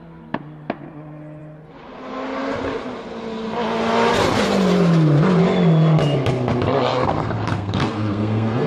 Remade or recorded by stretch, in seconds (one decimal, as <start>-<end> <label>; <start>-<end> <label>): 0.0-6.9 recorded; 6.9-8.7 remade